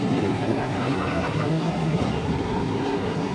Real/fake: fake